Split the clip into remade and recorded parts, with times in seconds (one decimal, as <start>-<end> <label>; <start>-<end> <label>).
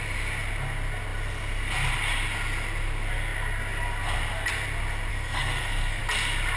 0.0-5.1 recorded; 5.1-6.0 remade; 6.0-6.6 recorded